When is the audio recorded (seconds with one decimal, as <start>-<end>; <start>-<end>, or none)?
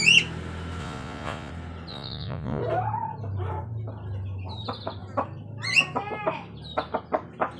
0.0-0.8; 1.5-1.9; 2.6-7.6